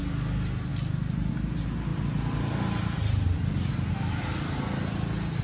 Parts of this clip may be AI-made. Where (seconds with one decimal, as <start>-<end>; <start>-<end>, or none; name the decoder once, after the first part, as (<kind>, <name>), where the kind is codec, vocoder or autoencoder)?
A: none